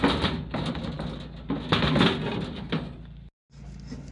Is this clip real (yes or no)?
yes